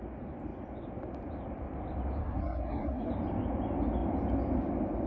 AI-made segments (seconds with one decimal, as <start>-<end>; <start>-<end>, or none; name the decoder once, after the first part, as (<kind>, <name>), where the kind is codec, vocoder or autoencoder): 2.2-3.1 (codec, SNAC)